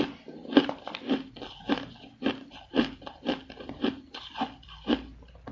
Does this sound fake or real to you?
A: real